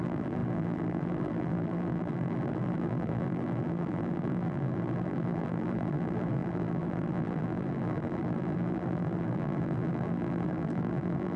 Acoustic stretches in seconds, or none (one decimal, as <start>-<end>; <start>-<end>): none